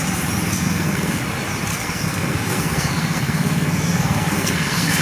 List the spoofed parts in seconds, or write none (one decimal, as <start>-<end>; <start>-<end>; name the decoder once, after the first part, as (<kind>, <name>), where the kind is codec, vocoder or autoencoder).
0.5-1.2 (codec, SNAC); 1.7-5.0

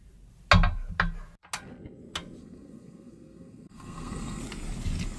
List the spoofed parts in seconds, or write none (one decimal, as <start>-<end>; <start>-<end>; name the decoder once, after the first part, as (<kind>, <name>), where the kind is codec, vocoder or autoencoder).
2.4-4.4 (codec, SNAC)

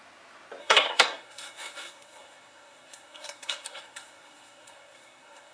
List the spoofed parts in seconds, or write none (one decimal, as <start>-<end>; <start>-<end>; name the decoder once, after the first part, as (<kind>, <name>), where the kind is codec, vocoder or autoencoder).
0.6-5.5 (codec, SNAC)